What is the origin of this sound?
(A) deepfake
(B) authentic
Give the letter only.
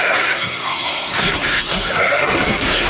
A